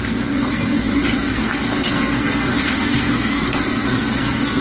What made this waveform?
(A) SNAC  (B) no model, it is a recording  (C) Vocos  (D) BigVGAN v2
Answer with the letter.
A